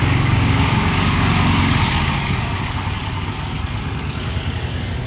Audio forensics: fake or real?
fake